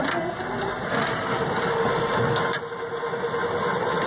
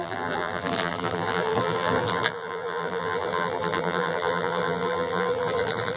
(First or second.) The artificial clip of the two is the second